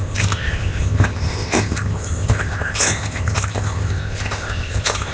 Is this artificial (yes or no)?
yes